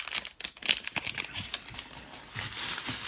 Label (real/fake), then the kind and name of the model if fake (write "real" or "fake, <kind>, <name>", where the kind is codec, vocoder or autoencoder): real